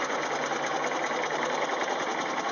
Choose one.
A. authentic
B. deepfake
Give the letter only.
A